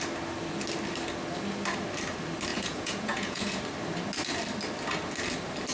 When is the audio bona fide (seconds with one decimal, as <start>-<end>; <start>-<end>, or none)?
0.0-2.5; 3.6-5.7